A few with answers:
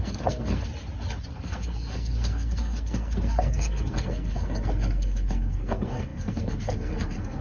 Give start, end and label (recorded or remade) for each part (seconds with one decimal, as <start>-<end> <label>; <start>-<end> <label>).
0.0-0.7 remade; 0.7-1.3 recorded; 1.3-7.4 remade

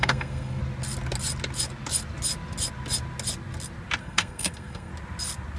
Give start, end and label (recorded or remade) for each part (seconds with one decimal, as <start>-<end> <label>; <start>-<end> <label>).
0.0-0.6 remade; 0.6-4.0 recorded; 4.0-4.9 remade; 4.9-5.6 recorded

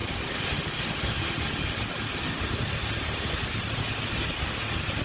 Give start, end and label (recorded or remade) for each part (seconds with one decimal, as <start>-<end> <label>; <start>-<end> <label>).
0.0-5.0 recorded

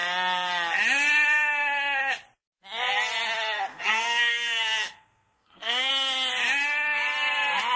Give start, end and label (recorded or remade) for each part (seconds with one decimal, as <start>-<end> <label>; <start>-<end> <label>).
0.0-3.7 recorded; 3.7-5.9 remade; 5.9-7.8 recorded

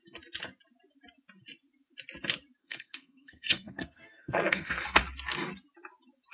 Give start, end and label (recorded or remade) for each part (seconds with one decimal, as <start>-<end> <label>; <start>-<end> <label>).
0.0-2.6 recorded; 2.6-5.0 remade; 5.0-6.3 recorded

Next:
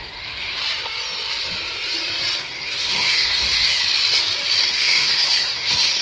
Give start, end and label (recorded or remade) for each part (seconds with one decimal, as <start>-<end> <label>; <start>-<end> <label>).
0.0-0.6 remade; 0.6-2.4 recorded; 2.4-3.8 remade; 3.8-4.7 recorded; 4.7-6.0 remade